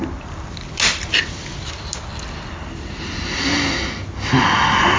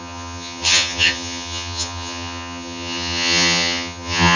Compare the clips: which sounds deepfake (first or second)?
second